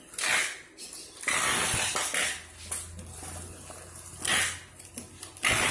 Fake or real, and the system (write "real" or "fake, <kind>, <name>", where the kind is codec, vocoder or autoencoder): real